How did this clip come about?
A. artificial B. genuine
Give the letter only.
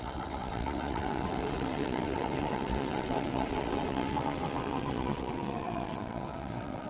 A